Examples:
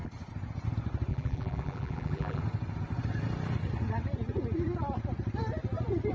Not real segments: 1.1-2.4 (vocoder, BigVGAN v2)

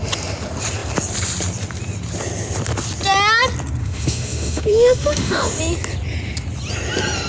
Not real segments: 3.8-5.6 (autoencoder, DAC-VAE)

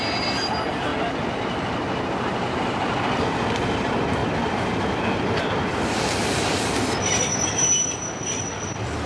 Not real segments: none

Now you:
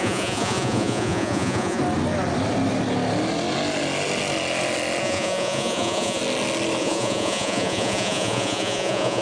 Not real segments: 0.0-1.8 (vocoder, Vocos); 5.0-6.2; 6.8-9.2

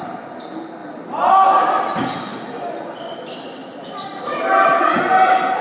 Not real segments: none

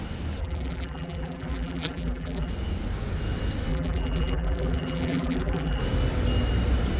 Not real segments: 0.4-2.5 (vocoder, BigVGAN v2); 3.7-5.8

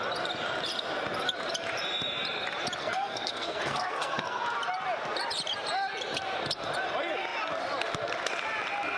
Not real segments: 2.8-4.4 (codec, SNAC)

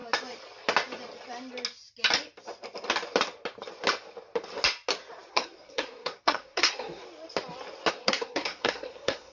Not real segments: 5.3-7.0 (codec, SNAC); 7.9-9.3